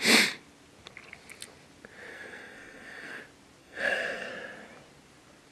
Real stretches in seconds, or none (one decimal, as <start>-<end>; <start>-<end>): 0.0-2.1; 3.2-3.6; 4.3-5.5